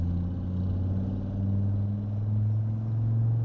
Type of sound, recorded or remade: recorded